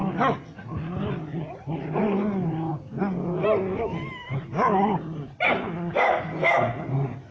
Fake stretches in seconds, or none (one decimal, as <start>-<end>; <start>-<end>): none